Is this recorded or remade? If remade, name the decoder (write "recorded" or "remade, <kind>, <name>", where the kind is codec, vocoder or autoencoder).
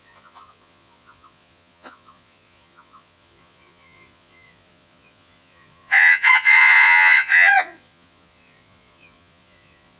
remade, vocoder, Vocos